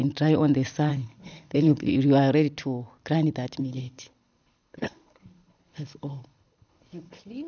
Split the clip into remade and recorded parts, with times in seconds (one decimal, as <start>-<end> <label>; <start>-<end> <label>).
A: 0.0-0.9 recorded; 0.9-1.9 remade; 1.9-3.6 recorded; 3.6-7.5 remade